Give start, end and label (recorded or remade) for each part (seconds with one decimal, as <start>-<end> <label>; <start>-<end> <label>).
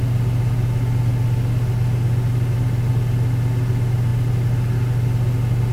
0.0-5.7 recorded